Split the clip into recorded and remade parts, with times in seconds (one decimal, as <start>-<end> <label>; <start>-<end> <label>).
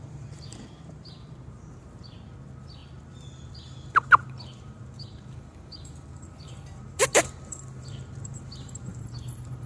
0.0-9.7 remade